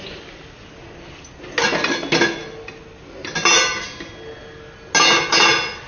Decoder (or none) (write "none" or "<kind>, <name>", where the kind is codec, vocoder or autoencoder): none